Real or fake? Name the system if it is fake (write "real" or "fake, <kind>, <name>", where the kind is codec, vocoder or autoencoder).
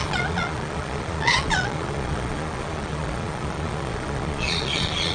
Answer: fake, vocoder, Vocos